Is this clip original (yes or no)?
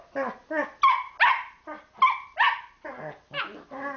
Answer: yes